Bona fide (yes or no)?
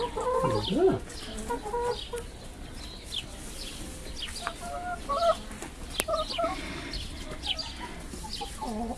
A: yes